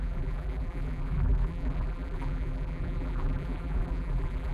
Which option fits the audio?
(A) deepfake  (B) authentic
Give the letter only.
A